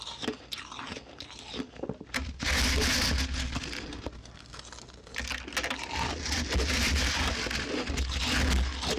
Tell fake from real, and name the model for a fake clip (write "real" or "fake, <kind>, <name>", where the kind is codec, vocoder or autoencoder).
real